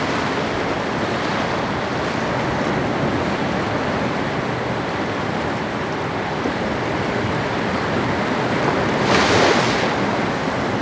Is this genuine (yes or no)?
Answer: yes